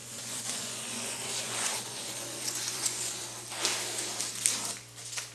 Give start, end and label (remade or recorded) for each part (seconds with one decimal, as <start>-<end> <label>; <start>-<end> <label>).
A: 0.0-3.2 remade; 3.2-5.3 recorded